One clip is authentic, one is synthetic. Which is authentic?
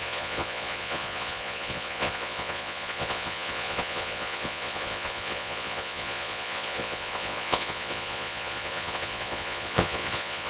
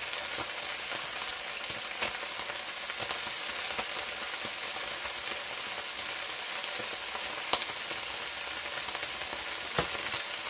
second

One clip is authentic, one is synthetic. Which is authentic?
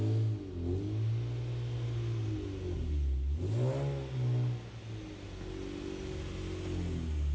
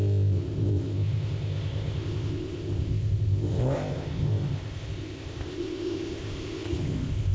first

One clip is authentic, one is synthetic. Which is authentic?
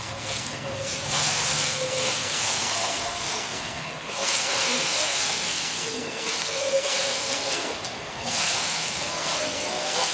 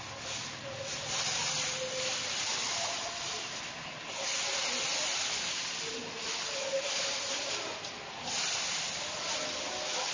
second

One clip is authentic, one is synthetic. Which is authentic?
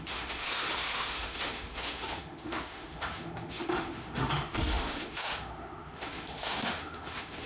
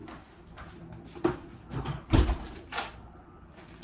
second